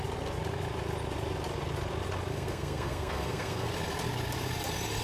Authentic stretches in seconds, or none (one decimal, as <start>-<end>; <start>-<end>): 0.0-2.3; 3.7-5.0